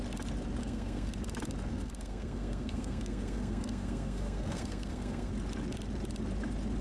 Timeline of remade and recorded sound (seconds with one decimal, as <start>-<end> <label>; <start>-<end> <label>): 0.0-0.6 recorded; 0.6-1.1 remade; 1.1-1.7 recorded; 1.7-5.3 remade; 5.3-6.8 recorded